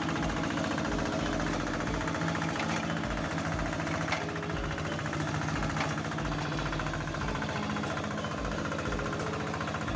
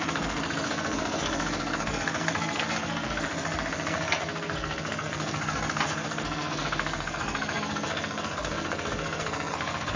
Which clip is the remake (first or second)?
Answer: second